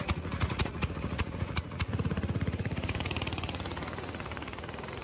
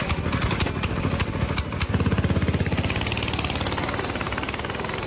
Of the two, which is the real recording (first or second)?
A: second